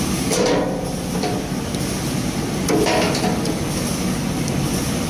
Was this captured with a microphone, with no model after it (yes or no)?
no